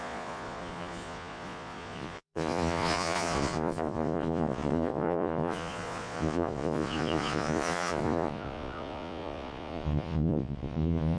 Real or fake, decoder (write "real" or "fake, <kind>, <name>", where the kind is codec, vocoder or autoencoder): fake, vocoder, Vocos